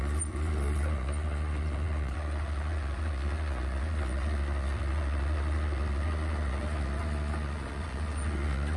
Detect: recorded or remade remade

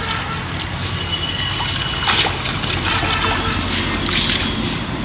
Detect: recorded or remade recorded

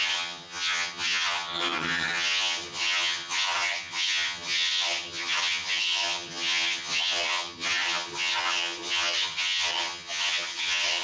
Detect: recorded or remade remade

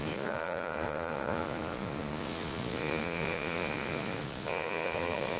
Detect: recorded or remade remade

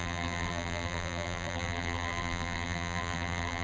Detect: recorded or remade remade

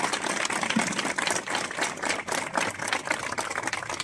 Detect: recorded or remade recorded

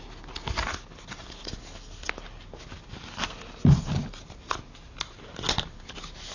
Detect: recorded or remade recorded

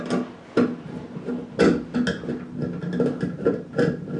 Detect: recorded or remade recorded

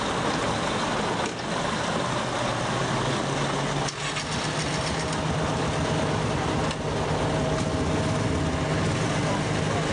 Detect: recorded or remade recorded